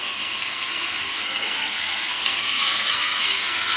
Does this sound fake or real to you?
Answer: fake